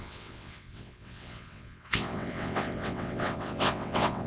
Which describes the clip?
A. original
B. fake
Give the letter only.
B